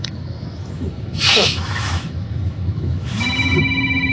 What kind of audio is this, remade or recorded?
remade